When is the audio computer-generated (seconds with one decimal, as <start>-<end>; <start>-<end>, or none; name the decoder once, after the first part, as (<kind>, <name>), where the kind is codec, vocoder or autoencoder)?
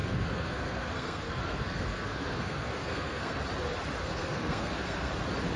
0.0-3.4 (codec, SNAC); 4.0-5.1